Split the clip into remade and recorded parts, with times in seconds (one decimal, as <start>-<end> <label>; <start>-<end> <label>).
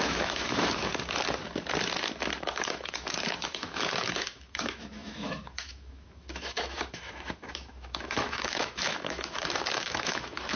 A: 0.0-0.9 remade; 0.9-2.4 recorded; 2.4-10.6 remade